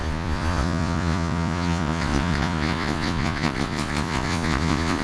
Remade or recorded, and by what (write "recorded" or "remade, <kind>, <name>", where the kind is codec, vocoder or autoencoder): remade, vocoder, Vocos